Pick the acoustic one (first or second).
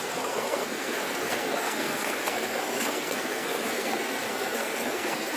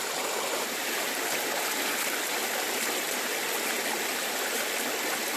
second